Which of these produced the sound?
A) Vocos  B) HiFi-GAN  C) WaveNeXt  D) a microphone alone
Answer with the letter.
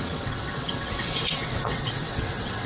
C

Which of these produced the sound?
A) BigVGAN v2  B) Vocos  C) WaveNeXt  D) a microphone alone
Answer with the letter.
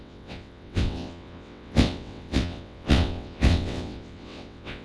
C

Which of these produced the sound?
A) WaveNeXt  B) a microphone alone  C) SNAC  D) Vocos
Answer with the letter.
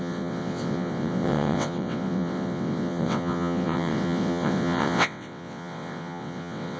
A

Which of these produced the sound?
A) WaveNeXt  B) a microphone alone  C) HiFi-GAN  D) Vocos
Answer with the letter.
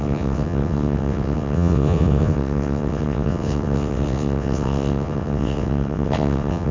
A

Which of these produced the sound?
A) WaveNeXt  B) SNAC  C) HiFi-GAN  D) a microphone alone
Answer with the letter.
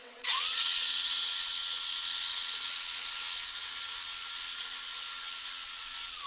A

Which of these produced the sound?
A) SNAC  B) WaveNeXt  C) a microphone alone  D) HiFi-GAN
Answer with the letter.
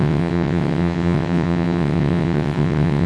B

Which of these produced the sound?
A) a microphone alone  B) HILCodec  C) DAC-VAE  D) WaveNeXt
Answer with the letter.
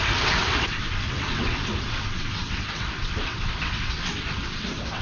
D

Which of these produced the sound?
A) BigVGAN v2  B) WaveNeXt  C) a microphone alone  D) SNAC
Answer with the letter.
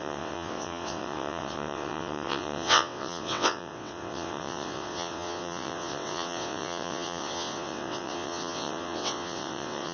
B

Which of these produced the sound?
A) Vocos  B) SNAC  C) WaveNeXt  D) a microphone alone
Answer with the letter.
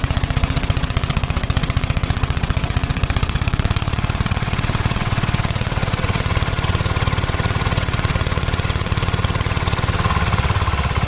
C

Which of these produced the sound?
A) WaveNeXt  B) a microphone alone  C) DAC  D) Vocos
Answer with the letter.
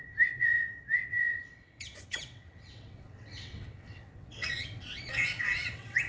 A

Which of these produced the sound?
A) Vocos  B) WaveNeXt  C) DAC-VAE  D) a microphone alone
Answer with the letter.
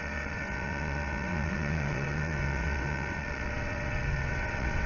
B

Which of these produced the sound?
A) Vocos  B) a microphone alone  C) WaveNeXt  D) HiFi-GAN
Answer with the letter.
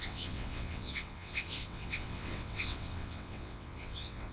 C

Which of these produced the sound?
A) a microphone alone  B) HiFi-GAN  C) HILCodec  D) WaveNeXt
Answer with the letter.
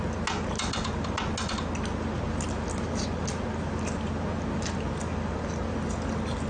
A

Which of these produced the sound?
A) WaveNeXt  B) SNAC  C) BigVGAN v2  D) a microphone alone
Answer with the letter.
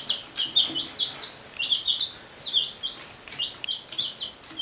D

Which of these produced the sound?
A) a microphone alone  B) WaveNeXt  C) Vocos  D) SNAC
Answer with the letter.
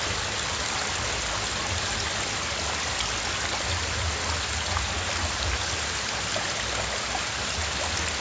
A